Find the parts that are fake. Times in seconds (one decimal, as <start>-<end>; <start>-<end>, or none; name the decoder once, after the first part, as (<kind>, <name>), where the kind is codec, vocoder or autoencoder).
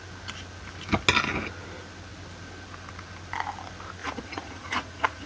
4.0-5.3 (vocoder, Vocos)